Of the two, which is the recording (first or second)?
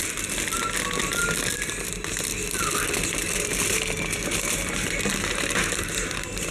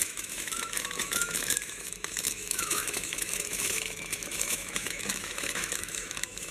first